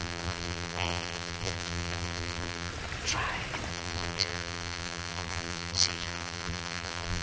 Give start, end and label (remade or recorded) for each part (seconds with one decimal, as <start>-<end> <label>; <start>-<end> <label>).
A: 0.0-2.7 remade; 2.7-3.7 recorded; 3.7-7.2 remade